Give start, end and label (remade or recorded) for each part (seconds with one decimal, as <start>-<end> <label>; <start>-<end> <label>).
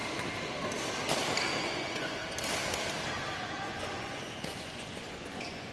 0.0-1.6 recorded; 1.6-2.2 remade; 2.2-3.4 recorded; 3.4-5.7 remade